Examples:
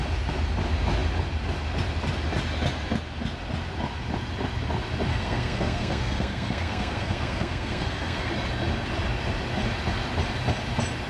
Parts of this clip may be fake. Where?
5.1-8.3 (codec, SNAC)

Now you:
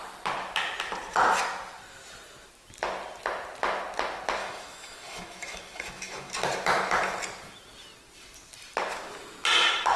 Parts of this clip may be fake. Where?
4.4-6.3 (autoencoder, DAC-VAE)

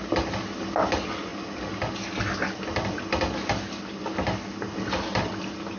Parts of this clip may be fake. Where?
none

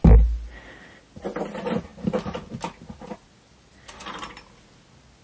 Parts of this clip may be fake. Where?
none

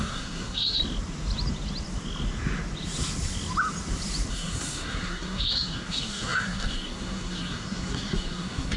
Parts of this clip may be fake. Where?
0.0-0.8 (codec, SNAC); 4.3-8.8